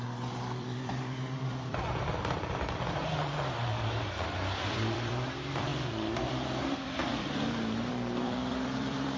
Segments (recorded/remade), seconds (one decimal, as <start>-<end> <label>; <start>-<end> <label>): 0.0-9.2 remade